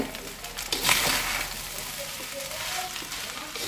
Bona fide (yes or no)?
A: yes